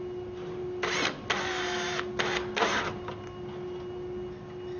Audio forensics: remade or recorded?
recorded